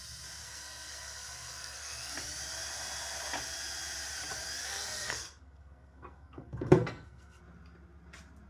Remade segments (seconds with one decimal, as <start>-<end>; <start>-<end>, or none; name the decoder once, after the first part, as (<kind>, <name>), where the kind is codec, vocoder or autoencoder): 0.4-2.1 (codec, SNAC); 4.6-7.4